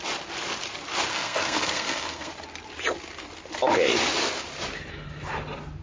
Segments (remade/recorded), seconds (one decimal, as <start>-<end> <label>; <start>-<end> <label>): 0.0-1.1 recorded; 1.1-2.3 remade; 2.3-5.8 recorded